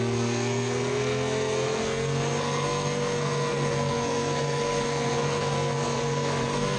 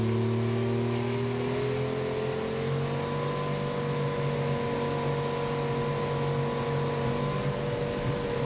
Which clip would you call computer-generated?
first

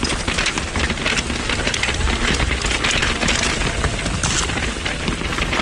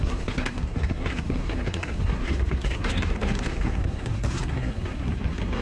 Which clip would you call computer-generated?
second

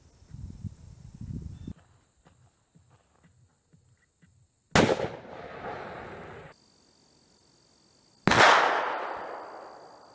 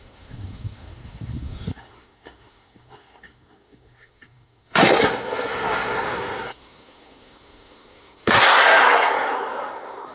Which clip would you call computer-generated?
second